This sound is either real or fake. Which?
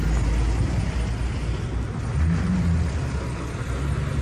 real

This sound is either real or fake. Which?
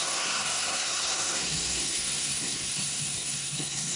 fake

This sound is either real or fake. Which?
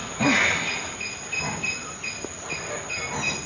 real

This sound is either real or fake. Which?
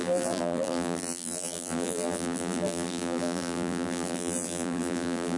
fake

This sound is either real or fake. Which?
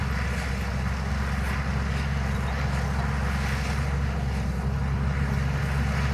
real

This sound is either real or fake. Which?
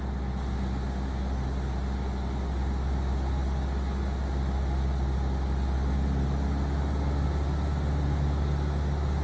real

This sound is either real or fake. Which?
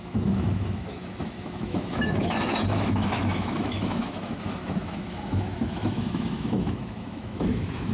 fake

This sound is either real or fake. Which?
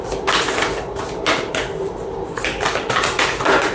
real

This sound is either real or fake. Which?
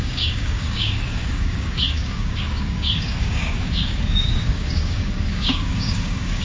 fake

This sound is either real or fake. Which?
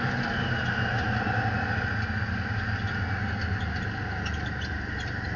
real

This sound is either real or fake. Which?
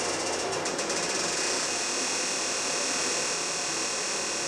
real